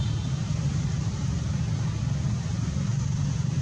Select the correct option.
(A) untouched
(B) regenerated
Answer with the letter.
A